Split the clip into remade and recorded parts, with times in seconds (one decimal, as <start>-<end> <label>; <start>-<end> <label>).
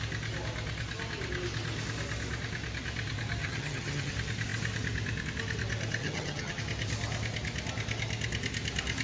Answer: 0.0-3.4 recorded; 3.4-4.1 remade; 4.1-6.0 recorded; 6.0-6.6 remade; 6.6-9.0 recorded